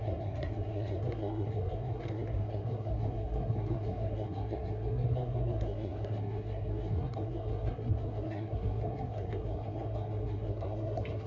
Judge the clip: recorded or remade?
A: remade